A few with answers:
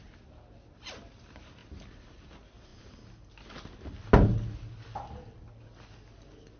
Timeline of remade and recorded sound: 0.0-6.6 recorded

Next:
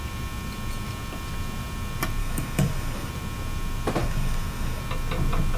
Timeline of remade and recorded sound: 0.0-2.2 recorded; 2.2-3.1 remade; 3.1-4.0 recorded; 4.0-4.8 remade; 4.8-5.6 recorded

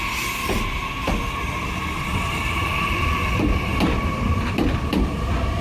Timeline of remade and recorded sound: 0.0-5.6 remade

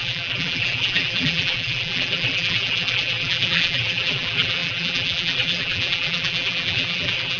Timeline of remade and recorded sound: 0.0-7.4 remade

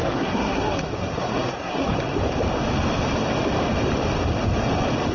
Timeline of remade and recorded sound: 0.0-1.9 remade; 1.9-5.1 recorded

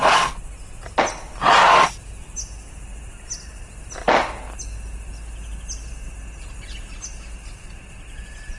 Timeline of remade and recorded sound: 0.0-8.6 recorded

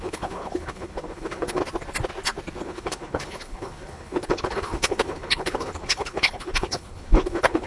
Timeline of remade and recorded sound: 0.0-1.6 remade; 1.6-2.6 recorded; 2.6-7.7 remade

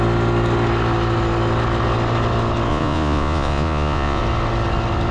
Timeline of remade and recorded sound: 0.0-2.7 recorded; 2.7-4.2 remade; 4.2-5.1 recorded